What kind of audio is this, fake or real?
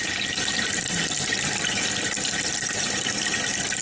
real